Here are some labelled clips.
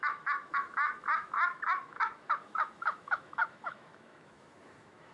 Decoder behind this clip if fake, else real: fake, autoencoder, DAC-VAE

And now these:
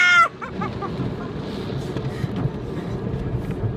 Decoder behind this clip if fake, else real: real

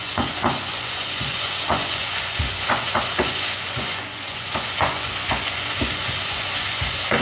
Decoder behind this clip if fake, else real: fake, vocoder, Vocos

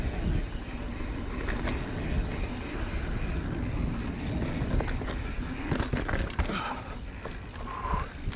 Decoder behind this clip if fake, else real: real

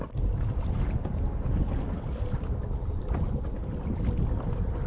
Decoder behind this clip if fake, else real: real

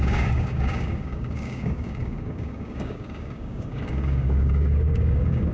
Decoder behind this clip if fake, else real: fake, codec, DAC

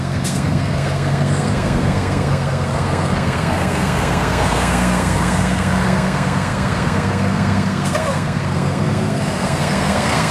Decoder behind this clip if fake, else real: fake, codec, SNAC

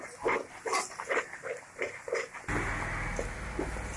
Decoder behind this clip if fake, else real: real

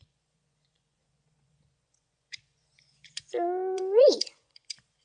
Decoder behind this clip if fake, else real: fake, vocoder, Vocos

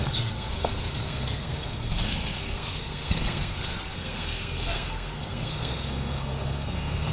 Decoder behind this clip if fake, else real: fake, codec, SNAC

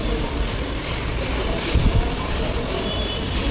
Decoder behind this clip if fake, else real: fake, vocoder, BigVGAN v2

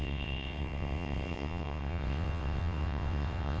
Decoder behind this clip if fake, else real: fake, vocoder, WaveNeXt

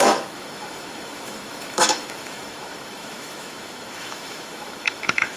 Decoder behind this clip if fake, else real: fake, autoencoder, DAC-VAE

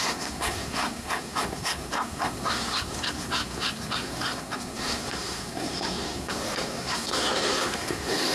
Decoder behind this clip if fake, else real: fake, codec, SNAC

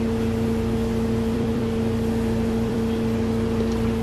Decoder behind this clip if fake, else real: fake, vocoder, BigVGAN v2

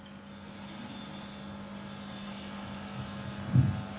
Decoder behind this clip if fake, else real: real